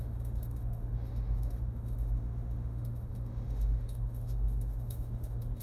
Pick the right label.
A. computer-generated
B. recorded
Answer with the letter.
A